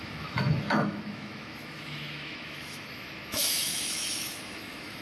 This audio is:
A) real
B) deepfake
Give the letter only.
B